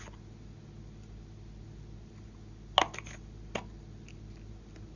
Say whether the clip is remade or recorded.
recorded